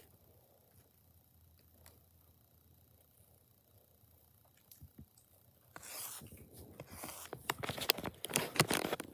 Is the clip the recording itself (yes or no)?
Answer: yes